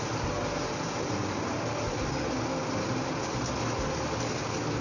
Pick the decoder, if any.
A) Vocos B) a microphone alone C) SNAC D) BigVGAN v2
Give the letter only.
B